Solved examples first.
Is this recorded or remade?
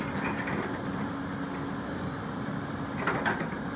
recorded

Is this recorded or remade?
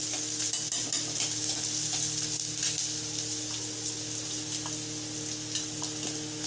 recorded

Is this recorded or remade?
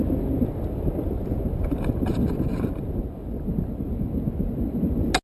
recorded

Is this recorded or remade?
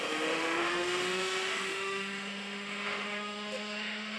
remade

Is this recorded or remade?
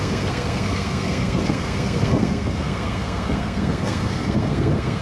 remade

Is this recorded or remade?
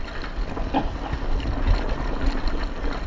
recorded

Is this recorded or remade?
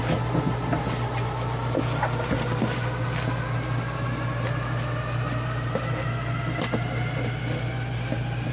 recorded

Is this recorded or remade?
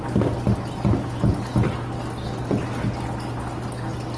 recorded